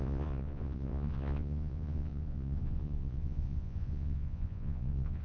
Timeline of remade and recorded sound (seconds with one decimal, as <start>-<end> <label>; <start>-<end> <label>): 0.0-5.2 remade